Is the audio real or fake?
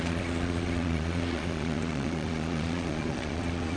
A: fake